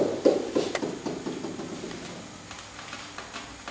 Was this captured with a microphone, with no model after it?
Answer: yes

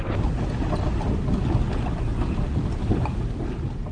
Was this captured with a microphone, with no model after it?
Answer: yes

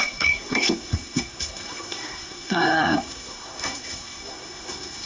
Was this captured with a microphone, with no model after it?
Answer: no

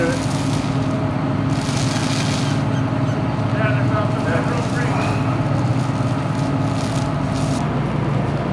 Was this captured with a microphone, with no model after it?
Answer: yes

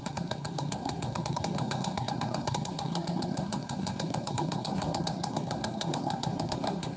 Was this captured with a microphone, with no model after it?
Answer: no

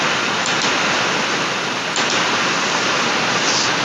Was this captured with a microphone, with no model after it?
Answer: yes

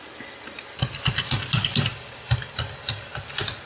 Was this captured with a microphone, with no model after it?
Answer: yes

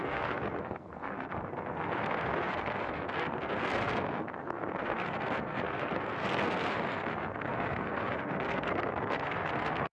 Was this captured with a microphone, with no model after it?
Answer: no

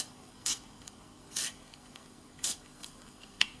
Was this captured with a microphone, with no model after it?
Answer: no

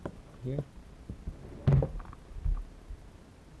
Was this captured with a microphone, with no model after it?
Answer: yes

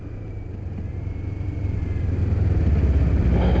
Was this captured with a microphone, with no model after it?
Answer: yes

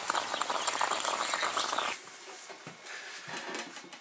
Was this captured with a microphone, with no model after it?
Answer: yes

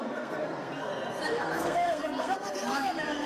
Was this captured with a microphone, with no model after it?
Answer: no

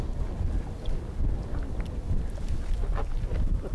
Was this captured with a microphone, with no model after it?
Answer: yes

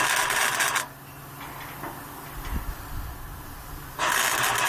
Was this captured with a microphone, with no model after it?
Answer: yes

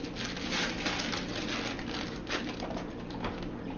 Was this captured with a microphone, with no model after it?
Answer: yes